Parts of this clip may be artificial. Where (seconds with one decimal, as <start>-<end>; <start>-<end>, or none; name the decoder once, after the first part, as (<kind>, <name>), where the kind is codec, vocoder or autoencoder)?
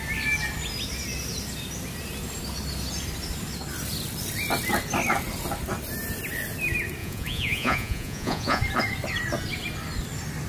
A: 7.0-8.6 (vocoder, Vocos)